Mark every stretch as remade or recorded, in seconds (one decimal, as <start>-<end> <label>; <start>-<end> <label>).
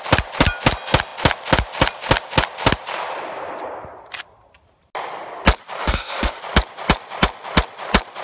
0.0-5.8 recorded; 5.8-6.4 remade; 6.4-8.2 recorded